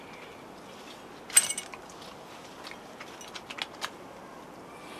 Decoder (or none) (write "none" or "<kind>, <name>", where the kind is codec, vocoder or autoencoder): none